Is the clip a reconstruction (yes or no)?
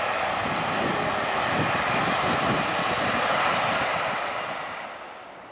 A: no